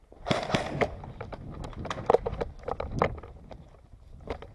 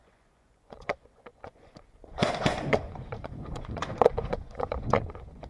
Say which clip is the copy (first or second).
second